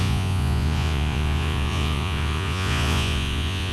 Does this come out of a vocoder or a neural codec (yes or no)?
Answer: yes